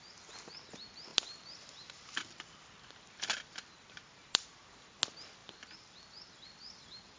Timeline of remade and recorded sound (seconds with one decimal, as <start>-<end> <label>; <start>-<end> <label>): 0.0-1.1 recorded; 1.1-5.0 remade; 5.0-5.4 recorded; 5.4-7.2 remade